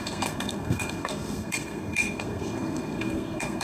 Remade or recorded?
remade